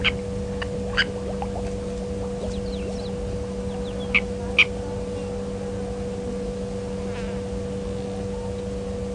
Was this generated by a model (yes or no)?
no